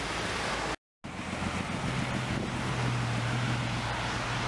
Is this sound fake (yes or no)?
no